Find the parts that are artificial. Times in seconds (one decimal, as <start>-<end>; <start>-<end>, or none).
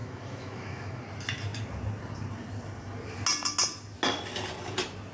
0.0-1.0